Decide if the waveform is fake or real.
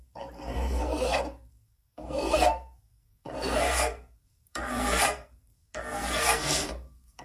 fake